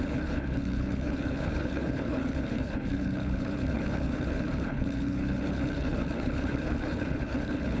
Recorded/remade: remade